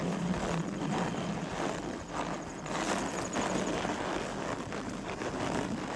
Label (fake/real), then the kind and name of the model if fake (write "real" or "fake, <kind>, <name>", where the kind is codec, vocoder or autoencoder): real